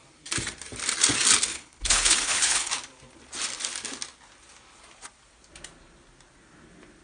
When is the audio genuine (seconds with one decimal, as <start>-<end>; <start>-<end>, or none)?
0.0-1.5; 2.7-7.0